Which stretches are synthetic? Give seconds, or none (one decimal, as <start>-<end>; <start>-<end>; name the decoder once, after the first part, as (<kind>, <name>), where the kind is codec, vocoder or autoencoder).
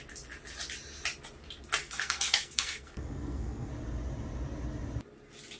1.8-3.7 (codec, SNAC)